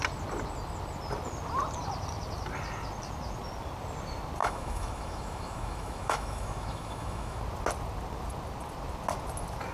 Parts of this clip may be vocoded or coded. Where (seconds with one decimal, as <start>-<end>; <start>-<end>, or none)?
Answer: 4.4-7.4